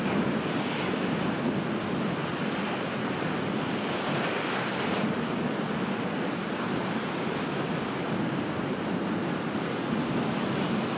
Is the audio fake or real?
real